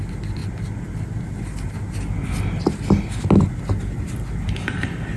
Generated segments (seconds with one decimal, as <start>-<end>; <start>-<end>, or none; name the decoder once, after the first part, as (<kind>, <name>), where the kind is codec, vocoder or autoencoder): none